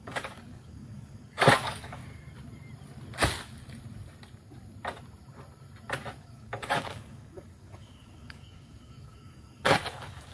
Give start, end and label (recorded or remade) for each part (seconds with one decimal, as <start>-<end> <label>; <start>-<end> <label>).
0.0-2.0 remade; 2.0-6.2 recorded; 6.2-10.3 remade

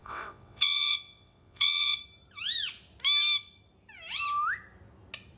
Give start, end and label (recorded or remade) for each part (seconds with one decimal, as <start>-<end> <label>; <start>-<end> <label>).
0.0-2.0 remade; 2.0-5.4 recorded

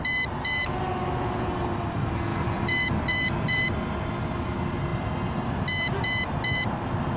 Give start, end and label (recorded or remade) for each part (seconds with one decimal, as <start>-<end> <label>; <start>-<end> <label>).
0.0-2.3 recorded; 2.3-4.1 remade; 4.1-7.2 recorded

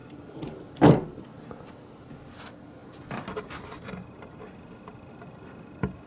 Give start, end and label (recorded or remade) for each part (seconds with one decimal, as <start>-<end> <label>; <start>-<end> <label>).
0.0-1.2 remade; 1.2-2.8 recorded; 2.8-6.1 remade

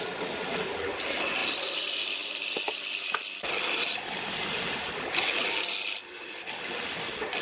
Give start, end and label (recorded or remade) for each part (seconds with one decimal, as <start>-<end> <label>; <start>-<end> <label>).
0.0-1.4 recorded; 1.4-2.3 remade; 2.3-7.4 recorded

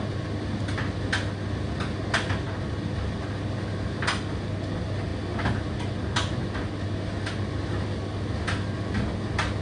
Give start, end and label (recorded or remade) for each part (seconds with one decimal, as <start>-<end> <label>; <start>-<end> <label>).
0.0-9.6 recorded